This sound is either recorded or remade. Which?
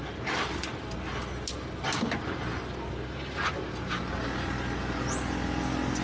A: recorded